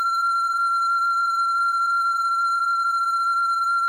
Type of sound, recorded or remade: remade